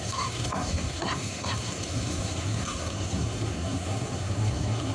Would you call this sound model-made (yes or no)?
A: yes